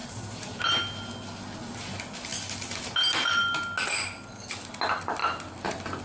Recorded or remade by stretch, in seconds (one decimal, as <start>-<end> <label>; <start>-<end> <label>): 0.0-0.6 remade; 0.6-6.0 recorded